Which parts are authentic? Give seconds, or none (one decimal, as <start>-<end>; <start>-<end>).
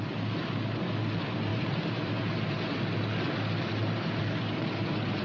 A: 0.0-1.5; 2.2-3.7; 4.2-5.2